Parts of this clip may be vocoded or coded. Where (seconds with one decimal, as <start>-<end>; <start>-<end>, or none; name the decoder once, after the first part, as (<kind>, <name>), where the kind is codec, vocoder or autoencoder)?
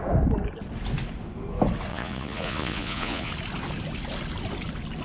1.9-3.3 (vocoder, Vocos)